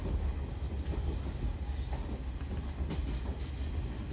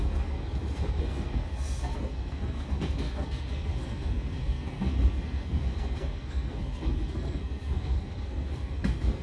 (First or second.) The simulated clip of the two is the second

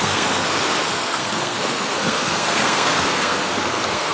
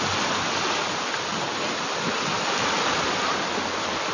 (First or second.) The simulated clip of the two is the first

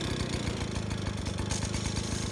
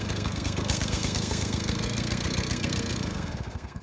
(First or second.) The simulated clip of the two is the second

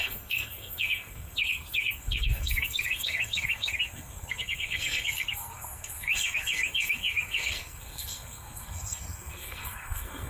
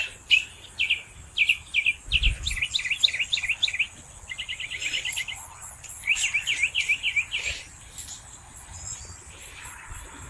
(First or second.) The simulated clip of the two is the first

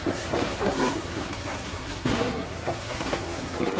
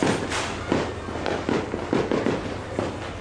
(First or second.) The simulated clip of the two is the first